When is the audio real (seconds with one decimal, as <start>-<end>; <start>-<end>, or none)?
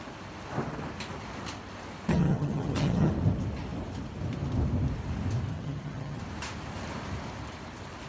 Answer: 0.0-2.1; 3.1-5.5; 6.2-8.1